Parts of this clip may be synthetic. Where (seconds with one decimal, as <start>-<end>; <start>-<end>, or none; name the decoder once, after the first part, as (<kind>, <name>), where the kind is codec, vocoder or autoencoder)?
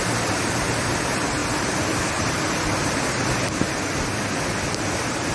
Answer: none